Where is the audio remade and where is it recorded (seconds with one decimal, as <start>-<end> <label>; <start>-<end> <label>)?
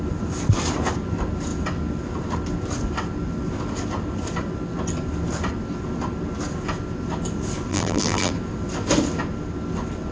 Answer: 0.0-7.7 recorded; 7.7-8.3 remade; 8.3-10.1 recorded